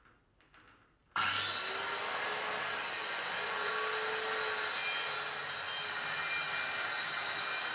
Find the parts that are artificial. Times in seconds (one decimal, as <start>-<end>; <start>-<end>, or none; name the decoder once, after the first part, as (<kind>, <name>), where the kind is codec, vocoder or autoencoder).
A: 3.0-3.7 (vocoder, Vocos)